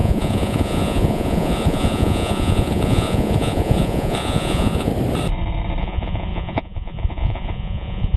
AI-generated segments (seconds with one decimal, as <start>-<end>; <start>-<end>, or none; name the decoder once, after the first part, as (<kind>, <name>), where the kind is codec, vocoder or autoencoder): 0.0-4.9 (vocoder, Vocos); 5.8-8.2